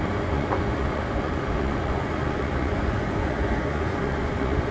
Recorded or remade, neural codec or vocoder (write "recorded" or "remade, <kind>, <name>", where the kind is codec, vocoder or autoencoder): remade, vocoder, Vocos